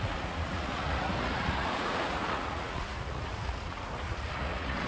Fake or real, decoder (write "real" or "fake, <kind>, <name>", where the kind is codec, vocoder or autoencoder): fake, vocoder, Vocos